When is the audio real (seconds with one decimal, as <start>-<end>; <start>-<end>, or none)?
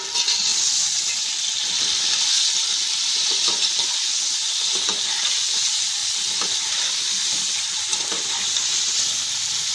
0.0-9.7